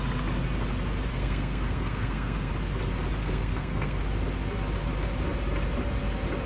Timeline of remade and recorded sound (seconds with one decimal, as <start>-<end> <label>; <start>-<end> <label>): 0.0-1.1 recorded; 1.1-2.5 remade; 2.5-3.2 recorded; 3.2-4.0 remade; 4.0-6.5 recorded